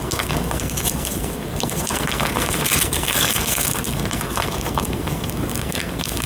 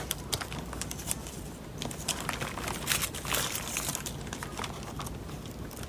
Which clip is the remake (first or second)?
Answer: first